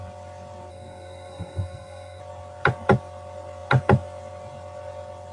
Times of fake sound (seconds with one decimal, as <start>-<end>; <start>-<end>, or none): 0.7-2.2